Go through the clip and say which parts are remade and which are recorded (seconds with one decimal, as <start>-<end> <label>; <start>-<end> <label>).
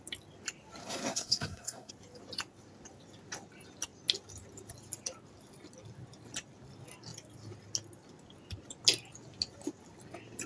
0.0-0.8 recorded; 0.8-1.9 remade; 1.9-10.5 recorded